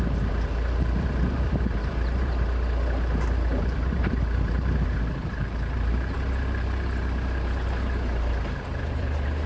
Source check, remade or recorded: remade